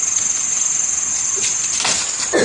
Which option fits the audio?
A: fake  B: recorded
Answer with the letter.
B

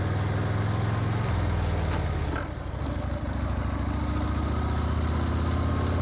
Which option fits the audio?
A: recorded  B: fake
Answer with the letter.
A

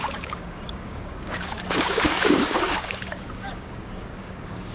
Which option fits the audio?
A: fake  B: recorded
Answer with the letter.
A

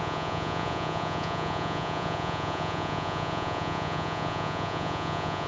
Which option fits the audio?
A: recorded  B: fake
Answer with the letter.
B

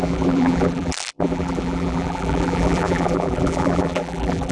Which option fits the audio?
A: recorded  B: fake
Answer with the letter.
B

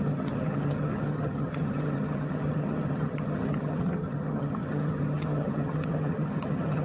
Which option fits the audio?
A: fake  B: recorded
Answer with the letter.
A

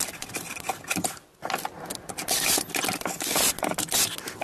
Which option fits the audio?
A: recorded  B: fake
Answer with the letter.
A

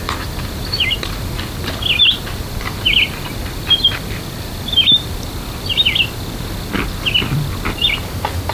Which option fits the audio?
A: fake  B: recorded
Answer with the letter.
B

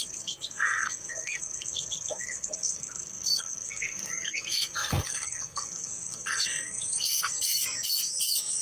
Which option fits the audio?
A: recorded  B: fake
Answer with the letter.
B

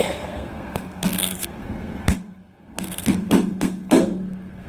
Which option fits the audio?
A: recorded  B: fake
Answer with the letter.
B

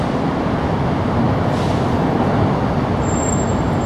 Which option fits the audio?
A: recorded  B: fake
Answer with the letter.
A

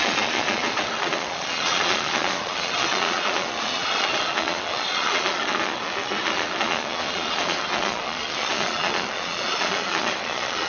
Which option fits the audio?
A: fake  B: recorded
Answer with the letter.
A